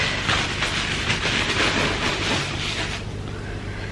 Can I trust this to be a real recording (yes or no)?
yes